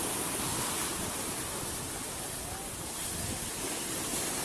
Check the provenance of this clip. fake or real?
real